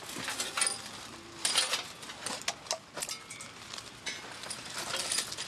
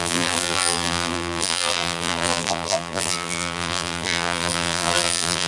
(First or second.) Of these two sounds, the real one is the first